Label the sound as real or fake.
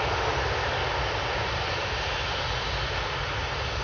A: real